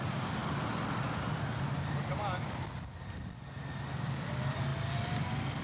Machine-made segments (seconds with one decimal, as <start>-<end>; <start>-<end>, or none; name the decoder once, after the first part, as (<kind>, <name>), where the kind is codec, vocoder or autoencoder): none